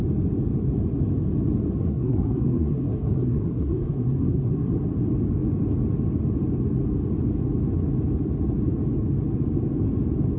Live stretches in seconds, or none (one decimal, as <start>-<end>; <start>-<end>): 0.0-1.8; 4.7-10.4